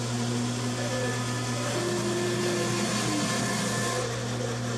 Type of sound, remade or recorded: recorded